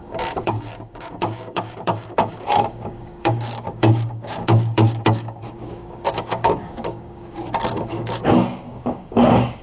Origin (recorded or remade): remade